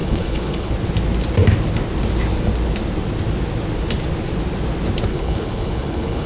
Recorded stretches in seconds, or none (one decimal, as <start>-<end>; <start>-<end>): 0.7-5.1